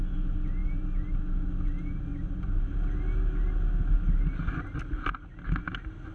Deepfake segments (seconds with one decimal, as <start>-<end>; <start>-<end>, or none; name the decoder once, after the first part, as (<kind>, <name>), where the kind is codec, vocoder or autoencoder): none